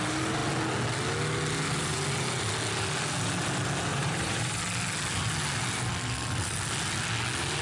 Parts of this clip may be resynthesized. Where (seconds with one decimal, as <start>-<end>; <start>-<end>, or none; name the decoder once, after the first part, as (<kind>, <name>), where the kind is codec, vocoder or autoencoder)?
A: 3.9-4.6 (vocoder, BigVGAN v2)